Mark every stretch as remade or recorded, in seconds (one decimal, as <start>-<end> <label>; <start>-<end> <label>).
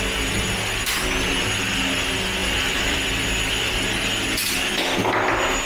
0.0-2.4 recorded; 2.4-3.8 remade; 3.8-5.7 recorded